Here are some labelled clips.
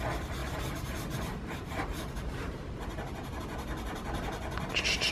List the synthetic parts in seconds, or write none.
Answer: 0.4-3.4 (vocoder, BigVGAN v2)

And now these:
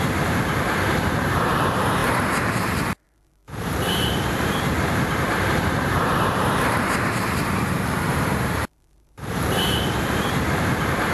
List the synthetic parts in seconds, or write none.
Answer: 0.0-11.1 (vocoder, BigVGAN v2)

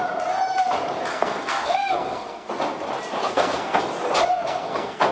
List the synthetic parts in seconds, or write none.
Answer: 1.1-2.5 (codec, SNAC); 3.2-3.8; 4.3-5.1

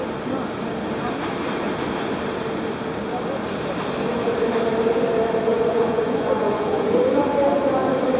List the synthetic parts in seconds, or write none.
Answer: 5.5-7.2 (vocoder, Vocos)

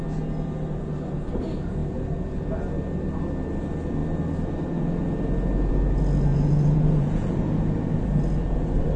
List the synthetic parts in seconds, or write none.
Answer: 6.3-7.6 (vocoder, Vocos)